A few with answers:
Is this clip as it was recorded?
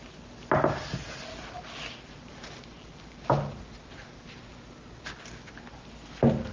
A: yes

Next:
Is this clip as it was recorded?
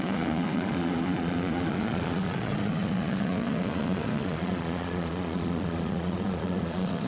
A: no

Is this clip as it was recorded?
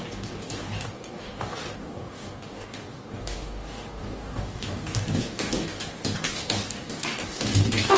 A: no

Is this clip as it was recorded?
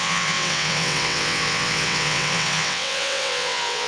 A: no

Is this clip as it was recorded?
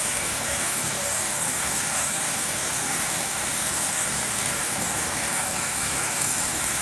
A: no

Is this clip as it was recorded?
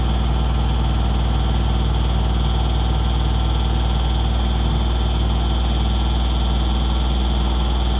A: yes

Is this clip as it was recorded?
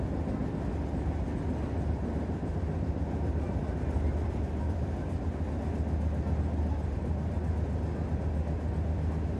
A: yes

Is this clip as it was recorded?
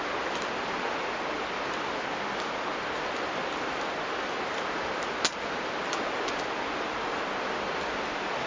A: yes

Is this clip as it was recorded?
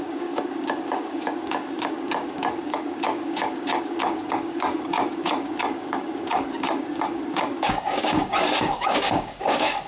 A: no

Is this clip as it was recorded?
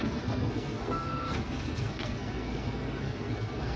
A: no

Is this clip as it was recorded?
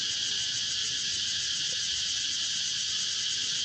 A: yes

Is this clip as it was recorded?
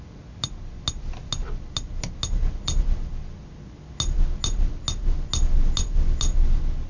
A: yes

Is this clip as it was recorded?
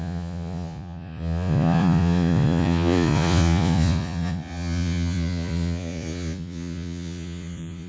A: no